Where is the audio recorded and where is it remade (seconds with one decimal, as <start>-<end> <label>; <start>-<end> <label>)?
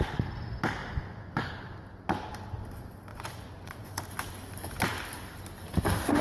0.0-0.8 recorded; 0.8-1.5 remade; 1.5-3.1 recorded; 3.1-4.0 remade; 4.0-6.2 recorded